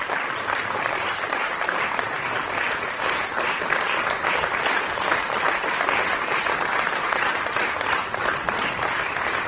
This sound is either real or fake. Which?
fake